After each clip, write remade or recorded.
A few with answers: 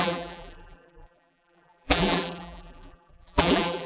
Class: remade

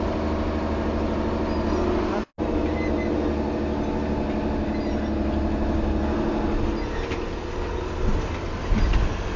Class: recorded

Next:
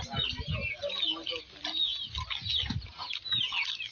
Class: recorded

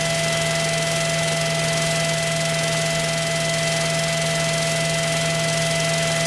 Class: recorded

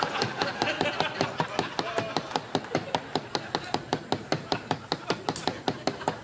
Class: recorded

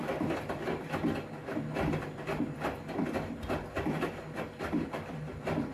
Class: recorded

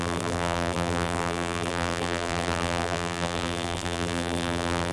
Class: remade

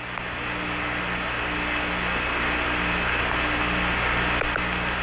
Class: recorded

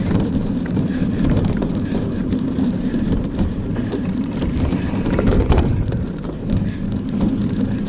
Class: remade